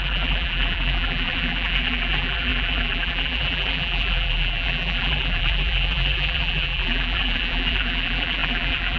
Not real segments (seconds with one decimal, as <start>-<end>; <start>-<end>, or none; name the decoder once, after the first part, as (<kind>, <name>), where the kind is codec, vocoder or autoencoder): 0.0-9.0 (vocoder, BigVGAN v2)